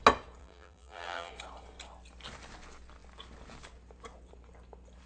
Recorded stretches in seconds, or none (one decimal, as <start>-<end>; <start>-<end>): 0.0-0.4; 1.3-5.1